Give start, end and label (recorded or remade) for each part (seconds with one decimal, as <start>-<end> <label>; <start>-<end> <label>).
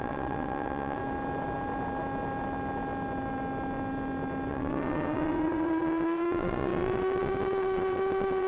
0.0-1.0 remade; 1.0-4.5 recorded; 4.5-8.5 remade